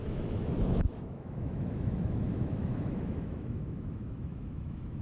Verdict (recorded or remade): remade